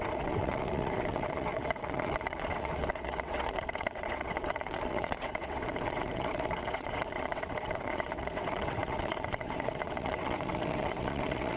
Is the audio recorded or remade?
remade